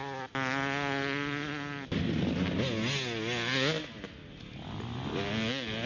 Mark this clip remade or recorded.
recorded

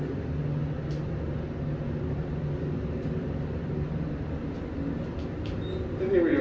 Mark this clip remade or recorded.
recorded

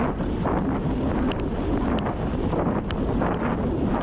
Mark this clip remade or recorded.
recorded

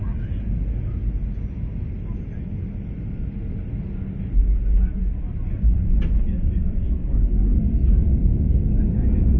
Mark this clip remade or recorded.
recorded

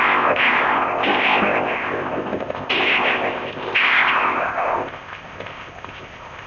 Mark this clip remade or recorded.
remade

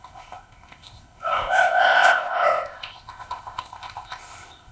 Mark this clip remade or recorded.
remade